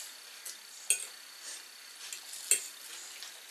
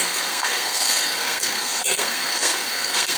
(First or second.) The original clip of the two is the first